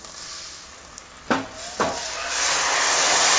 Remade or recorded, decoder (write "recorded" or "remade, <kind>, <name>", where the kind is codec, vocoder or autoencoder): recorded